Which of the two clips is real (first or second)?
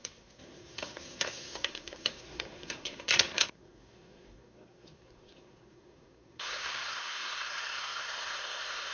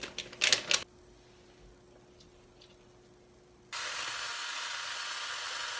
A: second